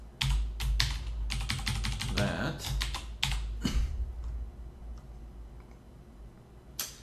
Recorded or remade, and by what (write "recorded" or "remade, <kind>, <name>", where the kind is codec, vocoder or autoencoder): recorded